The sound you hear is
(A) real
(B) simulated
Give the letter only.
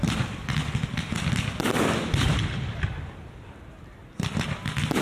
A